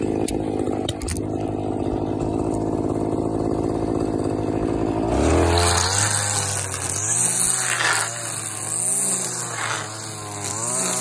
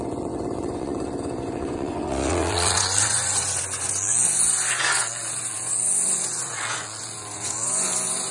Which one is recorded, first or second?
first